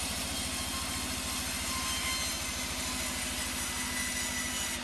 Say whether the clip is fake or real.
real